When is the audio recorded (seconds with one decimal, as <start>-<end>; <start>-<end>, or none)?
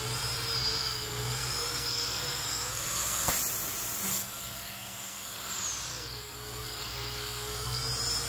0.0-0.8; 3.3-4.1; 5.5-5.9; 7.8-8.3